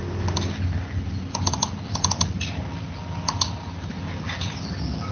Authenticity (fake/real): real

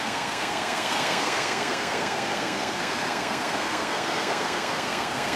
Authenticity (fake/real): fake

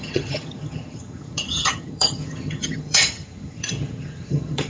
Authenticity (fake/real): fake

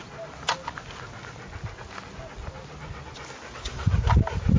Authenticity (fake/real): real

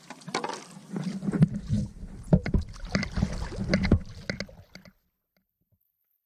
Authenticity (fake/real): real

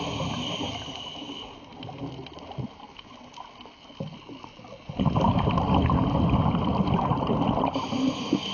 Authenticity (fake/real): real